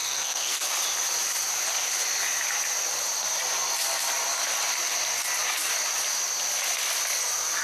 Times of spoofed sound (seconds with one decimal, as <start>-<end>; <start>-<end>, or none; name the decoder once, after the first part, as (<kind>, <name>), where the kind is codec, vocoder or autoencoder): 0.0-0.7 (codec, SNAC)